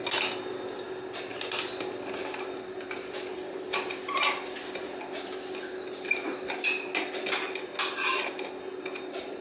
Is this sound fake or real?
real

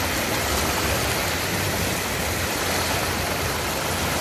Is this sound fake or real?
real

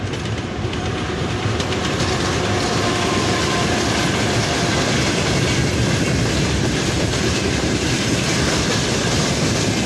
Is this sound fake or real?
fake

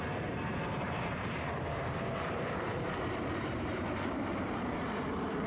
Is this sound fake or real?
fake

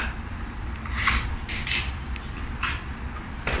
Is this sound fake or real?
fake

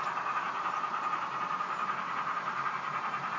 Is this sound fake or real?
fake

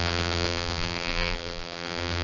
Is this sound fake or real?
fake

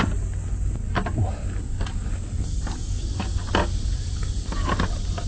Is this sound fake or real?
real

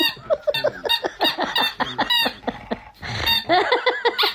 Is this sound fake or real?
real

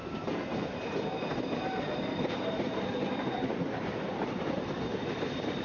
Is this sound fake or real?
fake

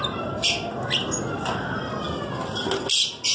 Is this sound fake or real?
real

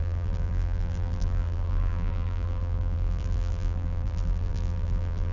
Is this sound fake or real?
fake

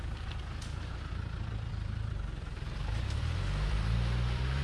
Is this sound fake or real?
fake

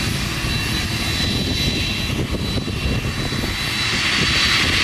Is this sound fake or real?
real